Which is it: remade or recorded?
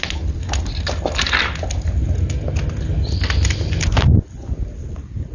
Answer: recorded